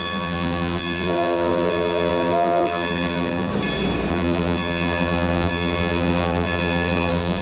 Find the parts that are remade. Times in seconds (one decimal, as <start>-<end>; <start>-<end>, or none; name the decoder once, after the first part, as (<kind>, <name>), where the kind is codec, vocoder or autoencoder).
0.0-3.5 (vocoder, BigVGAN v2); 4.1-7.4